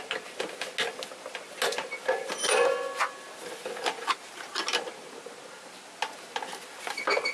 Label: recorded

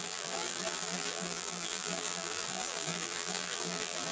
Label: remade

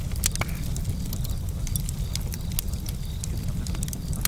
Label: recorded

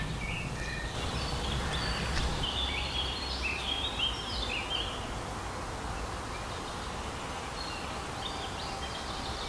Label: recorded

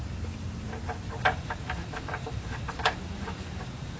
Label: remade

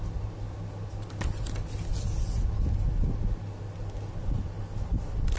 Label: recorded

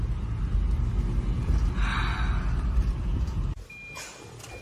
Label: recorded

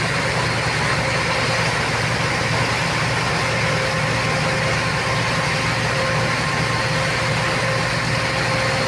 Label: recorded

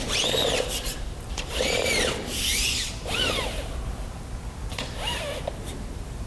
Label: recorded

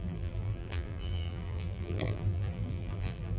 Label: remade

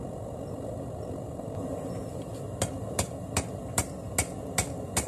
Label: recorded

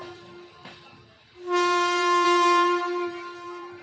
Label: remade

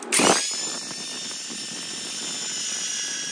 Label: recorded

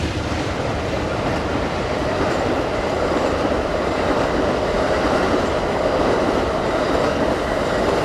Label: remade